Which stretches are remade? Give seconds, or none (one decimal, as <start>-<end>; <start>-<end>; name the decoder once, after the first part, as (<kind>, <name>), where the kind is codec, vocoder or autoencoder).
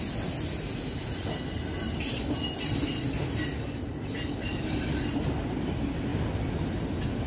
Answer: 4.5-5.2 (vocoder, BigVGAN v2); 6.1-6.7